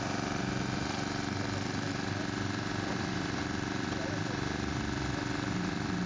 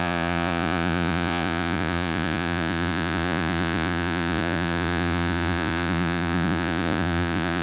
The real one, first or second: first